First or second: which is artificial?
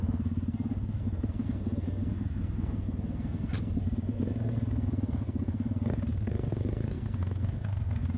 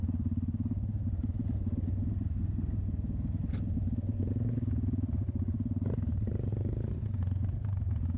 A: first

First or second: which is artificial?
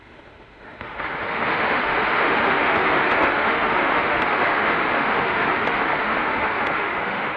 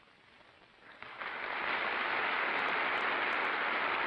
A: first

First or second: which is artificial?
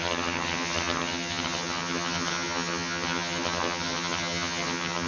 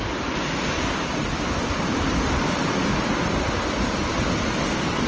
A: first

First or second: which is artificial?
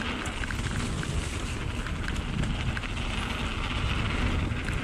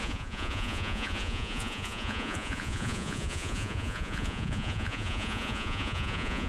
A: second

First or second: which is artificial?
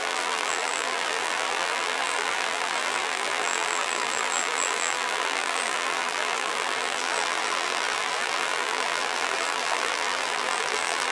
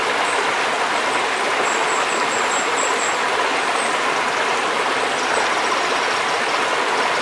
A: first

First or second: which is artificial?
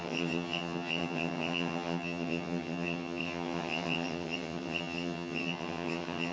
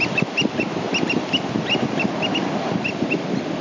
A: first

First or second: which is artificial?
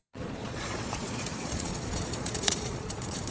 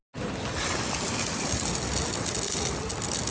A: first